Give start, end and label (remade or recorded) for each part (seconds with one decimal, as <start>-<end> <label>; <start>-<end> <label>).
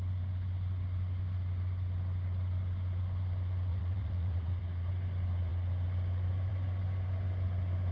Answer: 0.0-3.7 recorded; 3.7-4.6 remade; 4.6-7.9 recorded